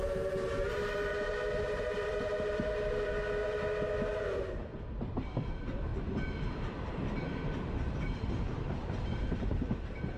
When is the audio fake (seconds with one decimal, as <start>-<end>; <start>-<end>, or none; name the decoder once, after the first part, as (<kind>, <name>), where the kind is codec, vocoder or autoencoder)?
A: 0.0-3.4 (vocoder, BigVGAN v2); 5.1-5.9; 6.8-10.2